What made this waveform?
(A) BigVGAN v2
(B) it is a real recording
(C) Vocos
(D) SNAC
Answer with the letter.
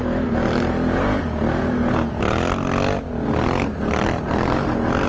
B